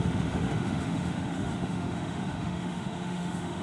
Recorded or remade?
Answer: remade